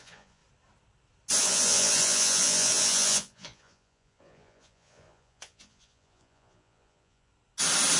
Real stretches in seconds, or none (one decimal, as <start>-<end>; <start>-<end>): 0.4-1.4; 7.3-8.0